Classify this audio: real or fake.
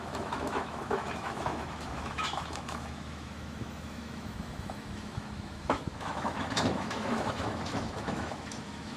fake